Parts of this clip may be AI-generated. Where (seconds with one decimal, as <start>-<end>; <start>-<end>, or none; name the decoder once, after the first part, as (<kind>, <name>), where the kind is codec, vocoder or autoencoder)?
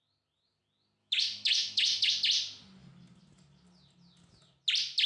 1.0-2.1 (autoencoder, DAC-VAE)